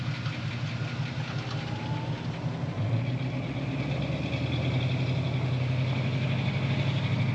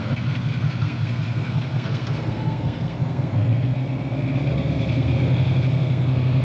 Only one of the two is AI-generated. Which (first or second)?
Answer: second